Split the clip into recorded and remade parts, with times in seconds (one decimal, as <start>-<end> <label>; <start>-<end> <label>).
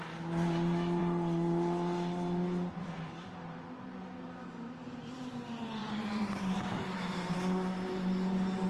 0.0-5.8 recorded; 5.8-6.8 remade; 6.8-8.7 recorded